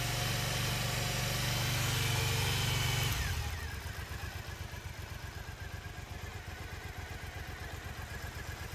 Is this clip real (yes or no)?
yes